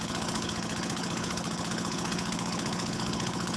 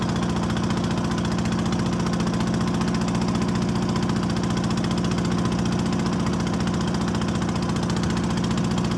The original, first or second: second